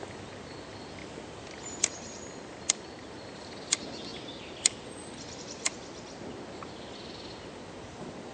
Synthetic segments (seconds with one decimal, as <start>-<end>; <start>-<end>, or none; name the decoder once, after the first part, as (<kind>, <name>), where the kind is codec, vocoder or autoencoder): none